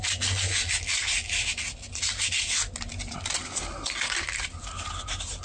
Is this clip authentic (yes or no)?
yes